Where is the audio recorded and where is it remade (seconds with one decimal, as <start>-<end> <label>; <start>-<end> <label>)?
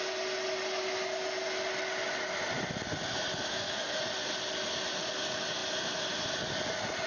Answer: 0.0-3.5 recorded; 3.5-4.0 remade; 4.0-7.1 recorded